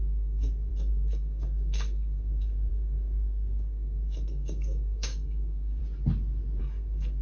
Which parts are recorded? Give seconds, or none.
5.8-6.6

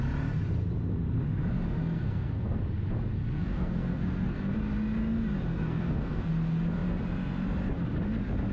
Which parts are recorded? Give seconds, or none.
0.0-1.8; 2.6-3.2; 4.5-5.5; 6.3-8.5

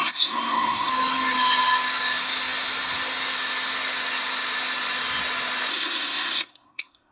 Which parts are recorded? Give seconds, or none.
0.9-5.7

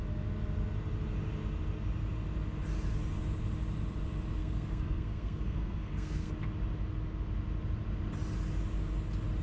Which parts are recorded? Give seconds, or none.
0.0-4.4; 6.3-9.4